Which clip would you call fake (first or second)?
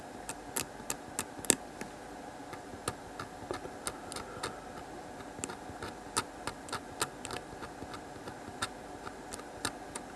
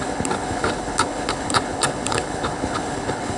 second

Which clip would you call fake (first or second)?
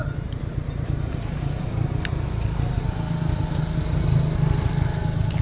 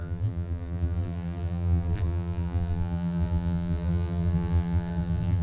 second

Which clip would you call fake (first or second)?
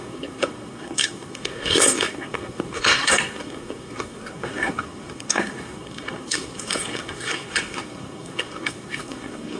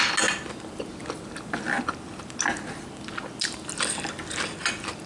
first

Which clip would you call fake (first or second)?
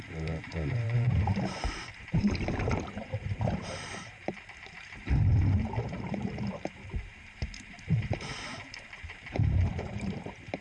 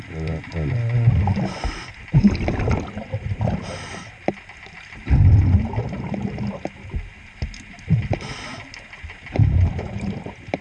first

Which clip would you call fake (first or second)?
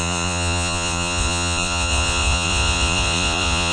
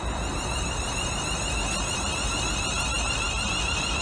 first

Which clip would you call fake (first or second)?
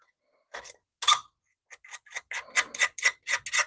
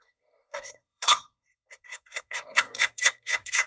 second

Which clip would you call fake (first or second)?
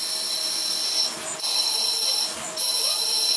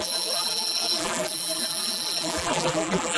second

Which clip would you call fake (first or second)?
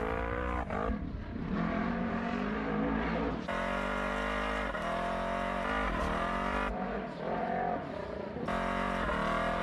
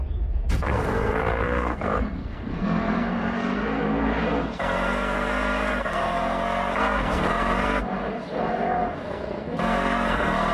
second